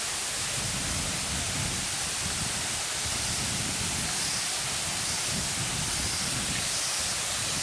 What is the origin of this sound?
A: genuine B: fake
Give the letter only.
A